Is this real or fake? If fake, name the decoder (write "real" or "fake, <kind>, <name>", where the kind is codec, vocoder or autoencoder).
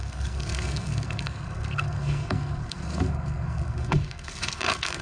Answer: fake, codec, SNAC